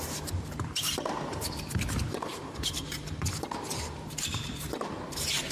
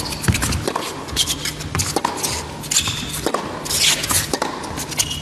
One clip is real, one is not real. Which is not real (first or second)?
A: first